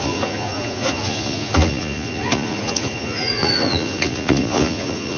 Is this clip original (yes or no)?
no